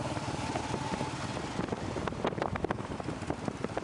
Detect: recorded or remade remade